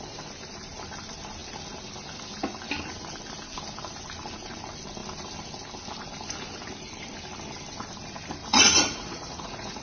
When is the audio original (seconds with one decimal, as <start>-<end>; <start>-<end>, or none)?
0.0-8.4